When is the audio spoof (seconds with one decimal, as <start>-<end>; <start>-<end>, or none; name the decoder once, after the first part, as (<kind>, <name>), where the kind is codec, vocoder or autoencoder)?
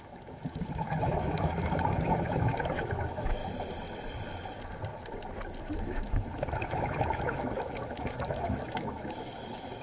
0.0-3.4 (autoencoder, DAC-VAE); 5.6-9.8